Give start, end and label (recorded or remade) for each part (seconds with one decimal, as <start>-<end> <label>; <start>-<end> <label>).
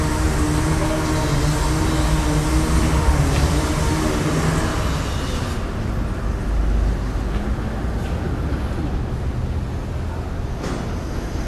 0.0-2.8 recorded; 2.8-3.7 remade; 3.7-11.5 recorded